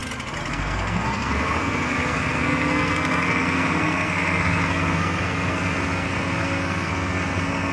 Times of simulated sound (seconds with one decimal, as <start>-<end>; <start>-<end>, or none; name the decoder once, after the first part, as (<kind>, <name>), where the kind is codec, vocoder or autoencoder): 0.5-7.7 (codec, SNAC)